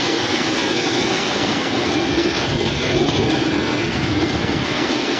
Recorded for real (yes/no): no